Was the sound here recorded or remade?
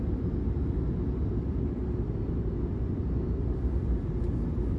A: recorded